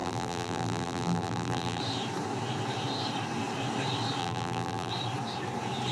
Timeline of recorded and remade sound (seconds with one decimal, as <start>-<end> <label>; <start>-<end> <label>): 0.0-1.8 remade; 1.8-4.2 recorded; 4.2-4.9 remade; 4.9-5.9 recorded